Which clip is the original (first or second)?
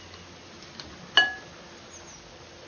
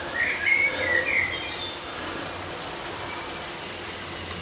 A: first